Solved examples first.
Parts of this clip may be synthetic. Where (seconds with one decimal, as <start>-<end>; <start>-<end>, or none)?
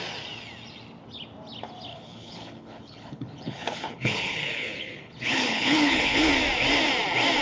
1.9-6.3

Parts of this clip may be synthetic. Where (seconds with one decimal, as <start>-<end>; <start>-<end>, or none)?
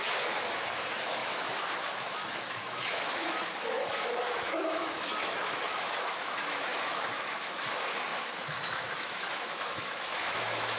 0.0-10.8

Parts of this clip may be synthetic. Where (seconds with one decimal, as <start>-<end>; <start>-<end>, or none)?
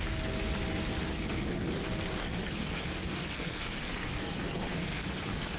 1.1-1.7; 2.2-5.6